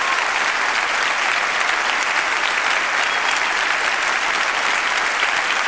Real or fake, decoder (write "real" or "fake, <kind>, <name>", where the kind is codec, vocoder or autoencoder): real